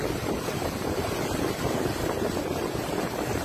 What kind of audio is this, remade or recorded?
remade